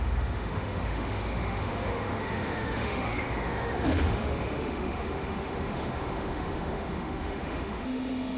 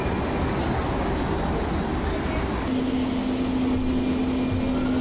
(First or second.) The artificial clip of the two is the first